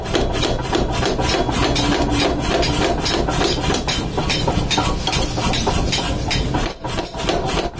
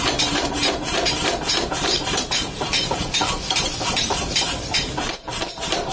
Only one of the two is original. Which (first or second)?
first